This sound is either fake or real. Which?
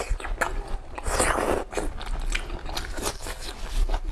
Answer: real